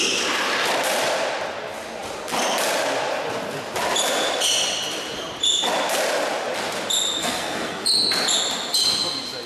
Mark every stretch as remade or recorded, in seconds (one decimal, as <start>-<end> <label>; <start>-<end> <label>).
0.0-7.2 recorded; 7.2-7.8 remade; 7.8-9.5 recorded